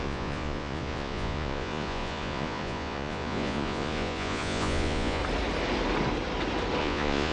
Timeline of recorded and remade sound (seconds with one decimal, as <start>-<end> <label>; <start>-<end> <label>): 0.0-5.2 remade; 5.2-6.8 recorded; 6.8-7.3 remade